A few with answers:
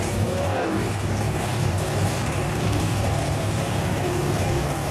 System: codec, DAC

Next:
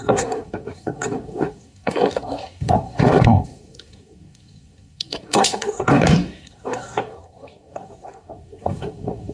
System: codec, SNAC